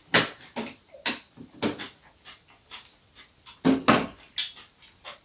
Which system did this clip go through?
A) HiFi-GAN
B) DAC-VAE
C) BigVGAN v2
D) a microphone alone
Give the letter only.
D